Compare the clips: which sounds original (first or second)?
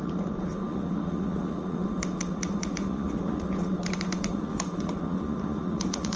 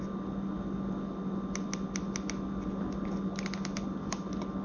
second